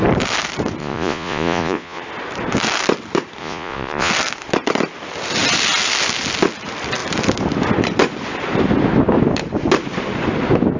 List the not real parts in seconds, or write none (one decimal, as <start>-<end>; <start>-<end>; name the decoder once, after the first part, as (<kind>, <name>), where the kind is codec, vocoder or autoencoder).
0.8-2.0 (vocoder, Vocos); 3.4-4.1